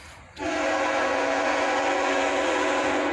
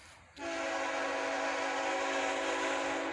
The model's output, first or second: first